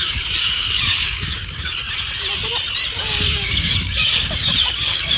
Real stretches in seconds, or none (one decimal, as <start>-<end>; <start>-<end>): 1.8-3.0